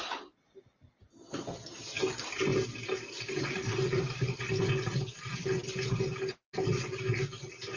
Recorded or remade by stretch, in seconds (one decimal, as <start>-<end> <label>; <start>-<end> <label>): 0.0-7.8 recorded